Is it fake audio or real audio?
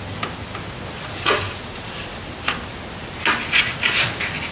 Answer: real